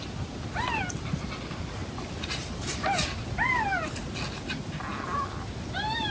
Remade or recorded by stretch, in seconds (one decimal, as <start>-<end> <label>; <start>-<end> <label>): 0.0-6.1 recorded